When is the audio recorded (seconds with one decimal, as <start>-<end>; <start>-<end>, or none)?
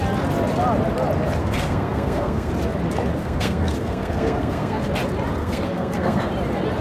0.0-1.4; 2.5-3.2; 4.8-5.4; 6.3-6.8